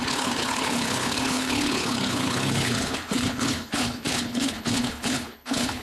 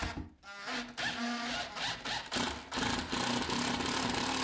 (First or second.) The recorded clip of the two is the second